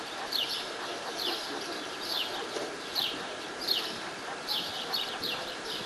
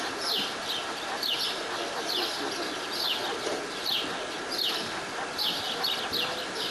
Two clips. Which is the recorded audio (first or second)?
second